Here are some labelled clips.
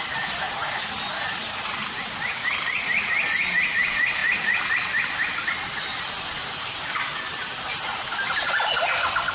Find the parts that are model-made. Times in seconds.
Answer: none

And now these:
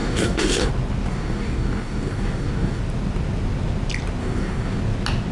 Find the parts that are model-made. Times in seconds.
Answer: 0.0-0.7 (codec, DAC); 1.1-2.8; 4.2-4.8

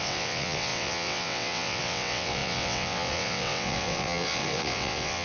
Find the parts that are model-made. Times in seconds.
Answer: 0.0-5.2 (vocoder, WaveNeXt)

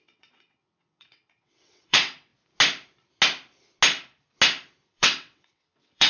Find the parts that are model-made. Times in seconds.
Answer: 0.0-2.3 (vocoder, WaveNeXt); 4.9-6.1

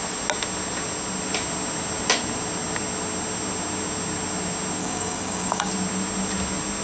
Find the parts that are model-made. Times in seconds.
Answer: 4.8-5.7 (codec, DAC)

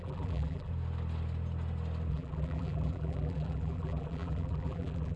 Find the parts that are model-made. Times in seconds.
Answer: 0.0-0.7 (vocoder, BigVGAN v2); 2.1-5.2